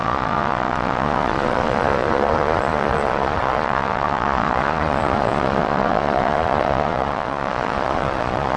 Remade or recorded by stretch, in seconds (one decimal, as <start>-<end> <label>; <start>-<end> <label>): 0.0-8.6 remade

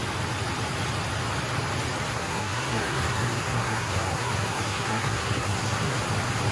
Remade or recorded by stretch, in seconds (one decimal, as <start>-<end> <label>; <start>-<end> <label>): 0.0-2.1 recorded; 2.1-6.0 remade; 6.0-6.5 recorded